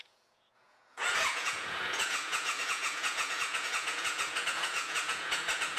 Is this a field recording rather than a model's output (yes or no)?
no